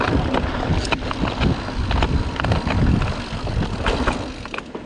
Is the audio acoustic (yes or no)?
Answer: yes